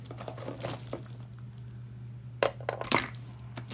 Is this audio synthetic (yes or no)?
no